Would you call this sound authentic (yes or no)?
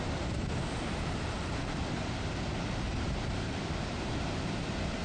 no